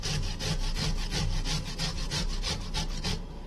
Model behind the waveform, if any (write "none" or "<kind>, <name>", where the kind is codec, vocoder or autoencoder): none